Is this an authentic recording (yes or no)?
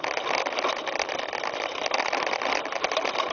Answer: yes